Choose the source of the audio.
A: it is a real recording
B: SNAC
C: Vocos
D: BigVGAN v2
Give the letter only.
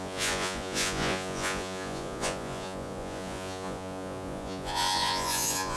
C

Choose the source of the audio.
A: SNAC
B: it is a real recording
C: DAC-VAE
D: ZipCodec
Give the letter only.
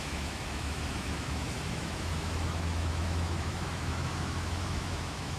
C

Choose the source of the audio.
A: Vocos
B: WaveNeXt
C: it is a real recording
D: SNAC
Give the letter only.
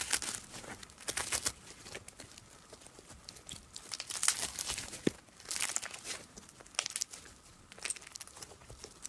C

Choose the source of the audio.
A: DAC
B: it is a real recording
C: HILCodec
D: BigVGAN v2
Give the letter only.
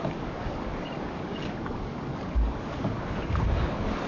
A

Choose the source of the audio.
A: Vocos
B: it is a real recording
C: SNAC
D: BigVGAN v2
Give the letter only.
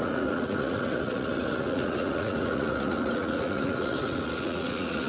A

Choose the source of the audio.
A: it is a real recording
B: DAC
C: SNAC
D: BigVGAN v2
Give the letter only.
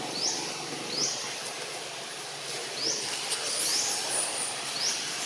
D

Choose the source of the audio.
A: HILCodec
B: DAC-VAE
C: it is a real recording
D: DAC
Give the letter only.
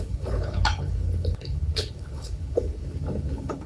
A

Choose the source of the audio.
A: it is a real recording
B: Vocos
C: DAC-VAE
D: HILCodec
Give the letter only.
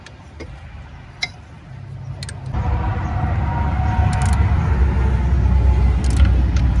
A